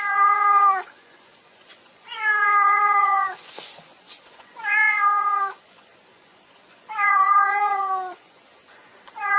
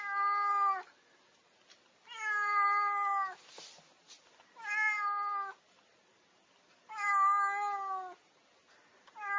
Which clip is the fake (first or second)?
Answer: first